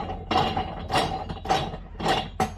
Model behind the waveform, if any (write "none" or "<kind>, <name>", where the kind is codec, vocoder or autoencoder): none